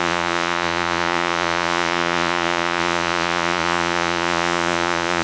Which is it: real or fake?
fake